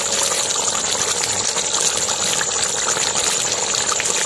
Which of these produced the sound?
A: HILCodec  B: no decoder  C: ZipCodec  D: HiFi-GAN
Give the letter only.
B